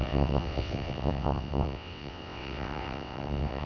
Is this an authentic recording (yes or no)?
no